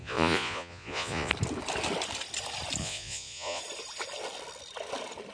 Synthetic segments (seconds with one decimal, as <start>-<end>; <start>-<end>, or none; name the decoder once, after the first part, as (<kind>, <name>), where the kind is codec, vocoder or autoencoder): 0.0-1.3 (vocoder, Vocos); 2.8-3.6